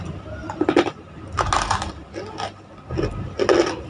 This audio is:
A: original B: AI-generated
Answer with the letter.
A